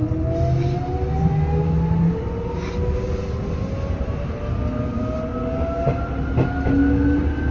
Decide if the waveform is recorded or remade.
recorded